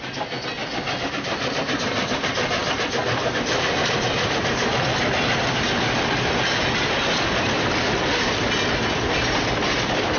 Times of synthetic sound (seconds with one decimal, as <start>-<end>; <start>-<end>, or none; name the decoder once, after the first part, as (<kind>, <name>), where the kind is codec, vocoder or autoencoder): none